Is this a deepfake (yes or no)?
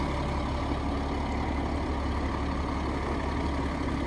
no